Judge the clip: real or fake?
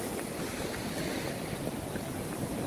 real